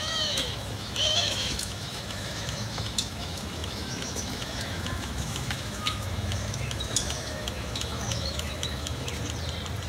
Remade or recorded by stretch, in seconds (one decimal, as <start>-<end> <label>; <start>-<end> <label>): 0.0-9.1 remade; 9.1-9.9 recorded

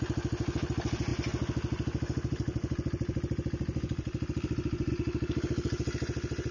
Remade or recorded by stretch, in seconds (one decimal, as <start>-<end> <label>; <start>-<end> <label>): 0.0-6.5 recorded